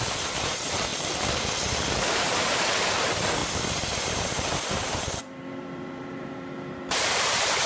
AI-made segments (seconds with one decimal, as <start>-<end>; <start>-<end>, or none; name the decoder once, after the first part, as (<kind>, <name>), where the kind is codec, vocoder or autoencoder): 0.0-0.9 (vocoder, BigVGAN v2); 2.1-7.7